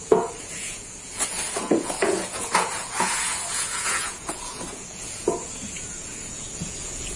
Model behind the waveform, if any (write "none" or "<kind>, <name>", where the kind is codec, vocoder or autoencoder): vocoder, Vocos